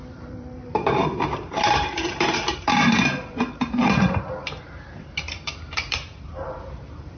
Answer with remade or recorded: remade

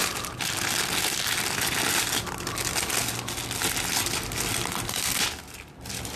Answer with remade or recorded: recorded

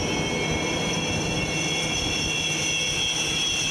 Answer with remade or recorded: recorded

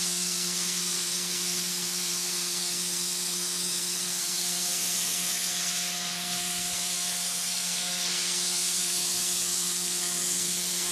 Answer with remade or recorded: remade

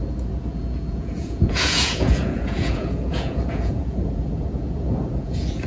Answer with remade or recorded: remade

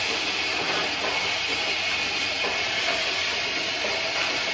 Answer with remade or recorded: recorded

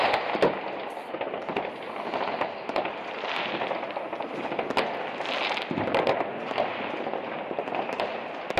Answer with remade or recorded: recorded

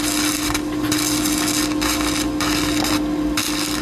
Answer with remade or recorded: recorded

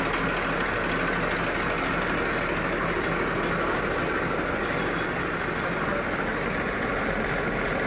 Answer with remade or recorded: recorded